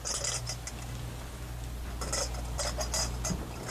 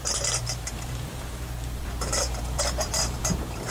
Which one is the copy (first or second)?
second